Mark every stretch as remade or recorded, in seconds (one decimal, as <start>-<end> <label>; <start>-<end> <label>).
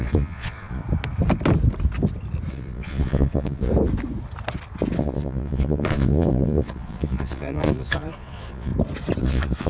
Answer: 0.0-0.8 remade; 0.8-2.5 recorded; 2.5-3.7 remade; 3.7-5.0 recorded; 5.0-8.7 remade; 8.7-9.2 recorded; 9.2-9.7 remade